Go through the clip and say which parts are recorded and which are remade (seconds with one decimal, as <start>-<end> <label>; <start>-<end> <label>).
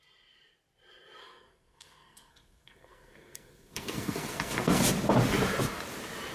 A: 0.0-1.2 recorded; 1.2-4.8 remade; 4.8-6.3 recorded